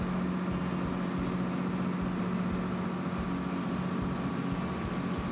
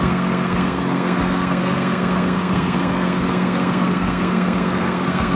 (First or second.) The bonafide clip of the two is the first